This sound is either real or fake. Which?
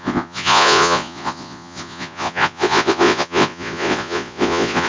fake